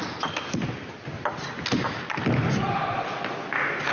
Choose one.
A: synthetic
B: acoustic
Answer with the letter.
B